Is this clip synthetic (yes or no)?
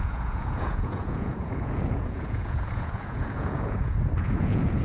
yes